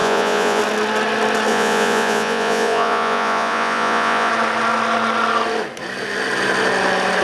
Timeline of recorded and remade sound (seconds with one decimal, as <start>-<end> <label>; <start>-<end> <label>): 0.0-0.6 remade; 0.6-1.5 recorded; 1.5-4.3 remade; 4.3-7.2 recorded